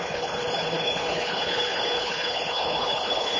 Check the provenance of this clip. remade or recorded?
remade